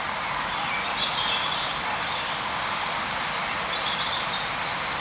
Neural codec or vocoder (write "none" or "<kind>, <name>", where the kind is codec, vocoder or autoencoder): none